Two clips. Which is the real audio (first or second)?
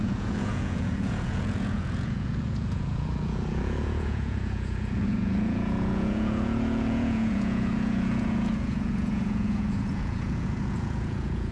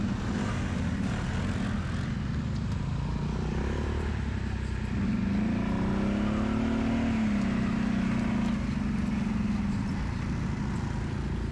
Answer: second